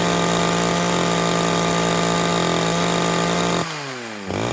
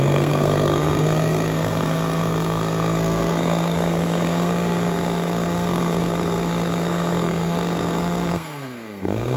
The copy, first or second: second